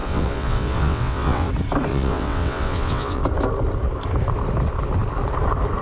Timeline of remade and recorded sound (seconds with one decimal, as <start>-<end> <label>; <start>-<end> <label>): 0.0-1.5 remade; 1.5-1.9 recorded; 1.9-3.2 remade; 3.2-5.8 recorded